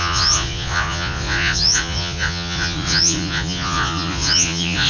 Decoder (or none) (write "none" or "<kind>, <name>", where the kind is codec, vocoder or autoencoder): vocoder, Vocos